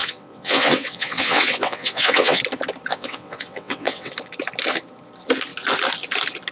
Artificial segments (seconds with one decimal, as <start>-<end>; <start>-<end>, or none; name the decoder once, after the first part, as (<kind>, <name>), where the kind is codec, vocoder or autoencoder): 0.0-2.4 (vocoder, WaveNeXt); 2.9-4.1